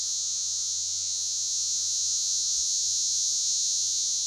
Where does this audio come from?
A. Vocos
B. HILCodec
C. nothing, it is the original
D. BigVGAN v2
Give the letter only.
A